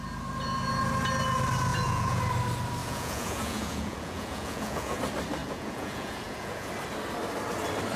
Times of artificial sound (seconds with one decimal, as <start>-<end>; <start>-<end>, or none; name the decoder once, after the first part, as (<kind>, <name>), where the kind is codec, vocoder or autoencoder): 1.7-2.2 (vocoder, Vocos); 2.8-5.0; 5.4-6.7